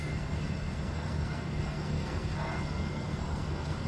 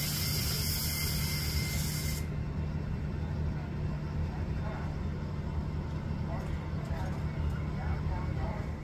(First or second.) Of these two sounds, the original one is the second